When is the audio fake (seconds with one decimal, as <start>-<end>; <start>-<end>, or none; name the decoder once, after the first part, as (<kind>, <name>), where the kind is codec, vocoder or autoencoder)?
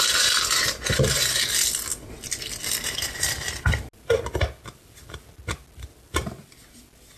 none